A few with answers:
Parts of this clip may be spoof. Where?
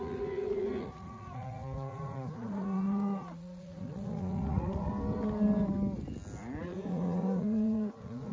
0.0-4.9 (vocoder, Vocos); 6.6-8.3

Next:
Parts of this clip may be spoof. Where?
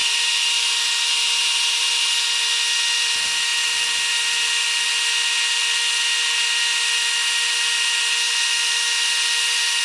none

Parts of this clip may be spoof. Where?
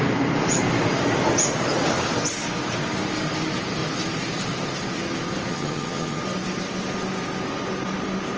5.5-6.2 (vocoder, HiFi-GAN)